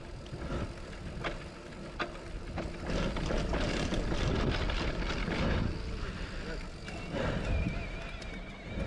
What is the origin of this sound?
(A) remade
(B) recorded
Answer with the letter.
B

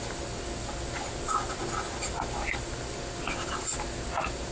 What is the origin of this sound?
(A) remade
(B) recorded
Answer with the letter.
B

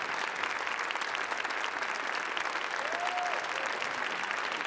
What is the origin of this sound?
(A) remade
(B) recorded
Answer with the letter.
B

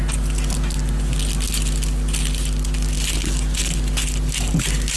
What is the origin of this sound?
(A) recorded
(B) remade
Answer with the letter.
A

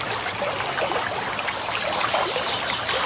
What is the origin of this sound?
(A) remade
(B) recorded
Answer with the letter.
B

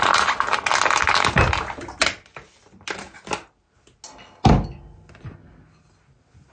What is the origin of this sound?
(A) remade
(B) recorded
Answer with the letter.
B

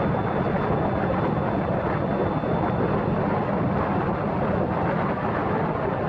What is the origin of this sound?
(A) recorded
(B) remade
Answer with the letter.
A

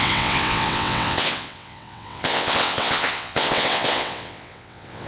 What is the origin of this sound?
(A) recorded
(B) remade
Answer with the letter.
B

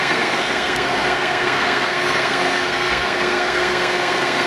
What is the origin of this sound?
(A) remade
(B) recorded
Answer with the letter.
A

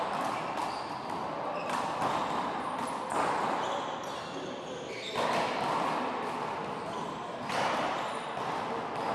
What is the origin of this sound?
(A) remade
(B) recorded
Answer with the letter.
B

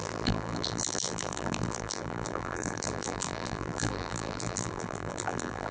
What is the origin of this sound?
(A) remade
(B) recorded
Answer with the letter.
A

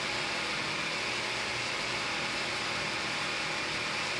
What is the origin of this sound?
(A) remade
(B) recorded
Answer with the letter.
B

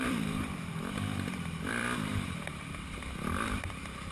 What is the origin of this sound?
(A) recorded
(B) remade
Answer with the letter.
B